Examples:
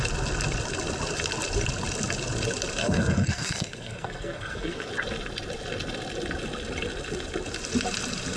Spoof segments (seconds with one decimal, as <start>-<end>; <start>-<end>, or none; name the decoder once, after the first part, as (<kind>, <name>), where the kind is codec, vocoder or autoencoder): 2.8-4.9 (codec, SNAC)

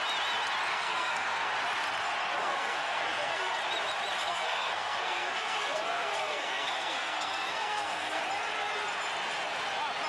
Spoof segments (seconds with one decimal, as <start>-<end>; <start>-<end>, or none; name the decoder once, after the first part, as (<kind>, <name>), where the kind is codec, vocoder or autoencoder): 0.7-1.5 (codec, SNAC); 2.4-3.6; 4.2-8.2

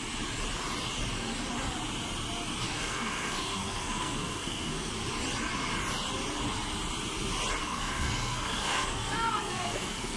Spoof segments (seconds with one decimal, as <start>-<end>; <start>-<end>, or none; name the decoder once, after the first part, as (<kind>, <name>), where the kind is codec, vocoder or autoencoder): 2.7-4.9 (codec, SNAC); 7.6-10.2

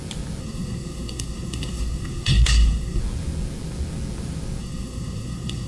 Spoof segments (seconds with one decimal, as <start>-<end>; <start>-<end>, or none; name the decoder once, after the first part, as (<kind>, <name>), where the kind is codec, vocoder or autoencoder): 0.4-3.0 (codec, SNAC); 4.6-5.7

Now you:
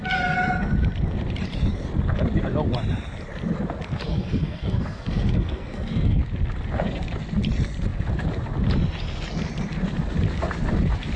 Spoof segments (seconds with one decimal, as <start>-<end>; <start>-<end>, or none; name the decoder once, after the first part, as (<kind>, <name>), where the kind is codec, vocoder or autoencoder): 4.1-6.2 (codec, SNAC)

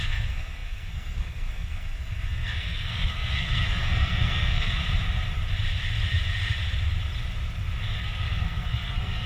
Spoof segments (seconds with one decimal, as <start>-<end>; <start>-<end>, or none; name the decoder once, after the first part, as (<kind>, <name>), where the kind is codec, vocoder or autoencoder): 0.0-4.8 (codec, SNAC); 8.0-9.3